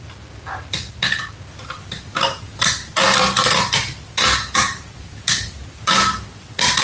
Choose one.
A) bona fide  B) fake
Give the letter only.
A